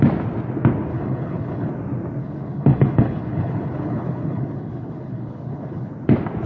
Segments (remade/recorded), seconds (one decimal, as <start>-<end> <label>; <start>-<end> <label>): 0.0-0.9 recorded; 0.9-1.7 remade; 1.7-2.2 recorded; 2.2-5.9 remade; 5.9-6.5 recorded